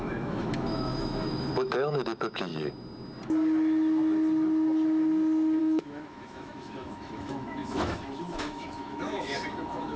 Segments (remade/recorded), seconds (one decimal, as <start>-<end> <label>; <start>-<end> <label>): 0.0-2.5 remade; 2.5-5.6 recorded; 5.6-10.0 remade